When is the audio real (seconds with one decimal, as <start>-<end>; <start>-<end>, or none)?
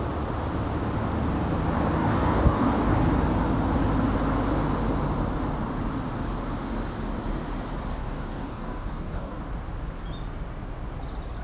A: 0.0-2.0; 2.9-7.9; 9.4-11.4